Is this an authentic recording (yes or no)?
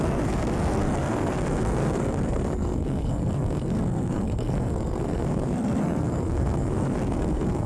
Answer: no